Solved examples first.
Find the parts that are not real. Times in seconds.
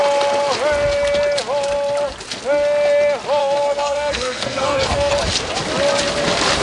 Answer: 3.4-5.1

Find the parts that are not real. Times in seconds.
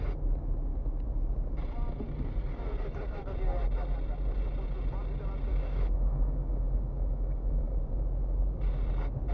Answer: 5.5-7.8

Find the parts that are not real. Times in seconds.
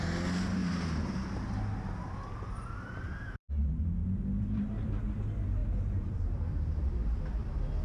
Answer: 0.6-3.5; 4.0-5.0; 5.6-6.9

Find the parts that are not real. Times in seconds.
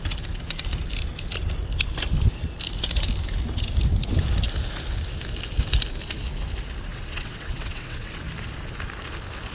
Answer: 6.9-8.2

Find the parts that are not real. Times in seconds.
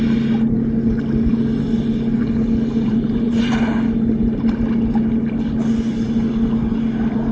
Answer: 2.9-3.5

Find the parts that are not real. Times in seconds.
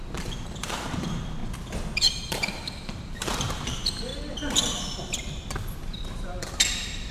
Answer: 0.0-1.4; 2.3-4.1; 6.0-7.1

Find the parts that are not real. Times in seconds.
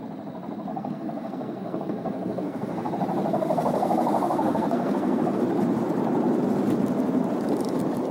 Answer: 0.7-2.9; 3.3-5.4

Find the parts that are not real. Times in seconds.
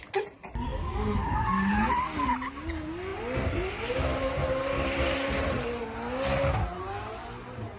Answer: 0.7-1.7